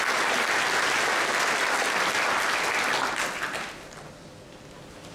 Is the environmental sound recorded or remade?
recorded